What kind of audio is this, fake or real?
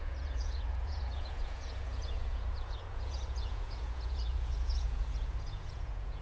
fake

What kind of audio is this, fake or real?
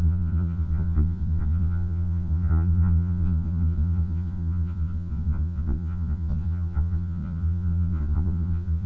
fake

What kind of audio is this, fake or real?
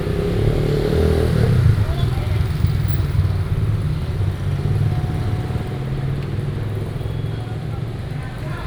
real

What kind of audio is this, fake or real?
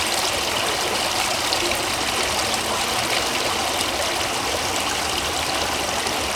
real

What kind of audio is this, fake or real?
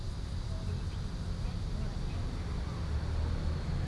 real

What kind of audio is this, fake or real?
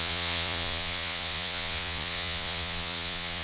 fake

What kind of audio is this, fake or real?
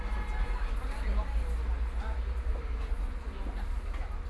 real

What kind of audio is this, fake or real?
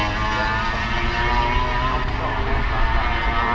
real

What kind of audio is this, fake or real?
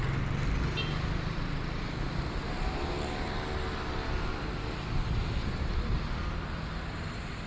real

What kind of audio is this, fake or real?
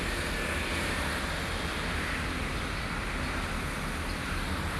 real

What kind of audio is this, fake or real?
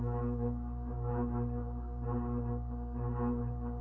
real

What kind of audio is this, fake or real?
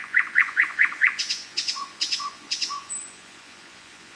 fake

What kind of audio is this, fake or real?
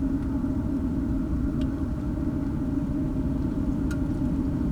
real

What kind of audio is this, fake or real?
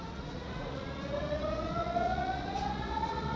fake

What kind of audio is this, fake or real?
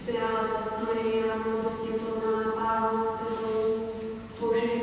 fake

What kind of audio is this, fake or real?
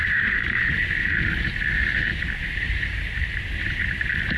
real